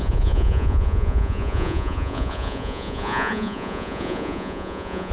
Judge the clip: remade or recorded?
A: remade